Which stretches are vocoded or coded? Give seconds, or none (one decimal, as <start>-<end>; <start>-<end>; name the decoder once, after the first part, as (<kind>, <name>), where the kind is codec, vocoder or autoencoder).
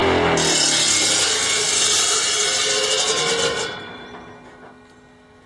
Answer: none